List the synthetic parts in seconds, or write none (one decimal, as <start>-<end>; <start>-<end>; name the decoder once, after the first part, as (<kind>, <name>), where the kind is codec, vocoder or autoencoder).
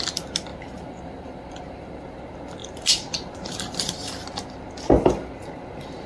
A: 0.5-1.6 (vocoder, BigVGAN v2); 2.6-4.6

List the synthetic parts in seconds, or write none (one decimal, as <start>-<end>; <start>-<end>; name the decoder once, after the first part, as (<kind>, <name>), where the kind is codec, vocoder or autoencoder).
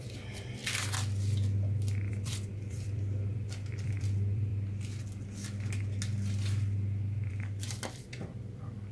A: 0.0-0.6 (vocoder, BigVGAN v2); 2.1-4.5; 7.3-8.9